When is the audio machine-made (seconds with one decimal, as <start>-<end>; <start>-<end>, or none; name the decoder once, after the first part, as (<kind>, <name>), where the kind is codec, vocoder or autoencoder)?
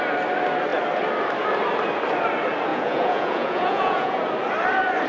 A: 2.7-4.2 (vocoder, Vocos)